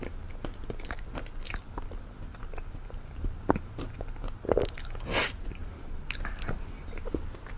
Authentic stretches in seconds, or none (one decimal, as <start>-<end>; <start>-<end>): 0.0-5.2; 5.7-7.6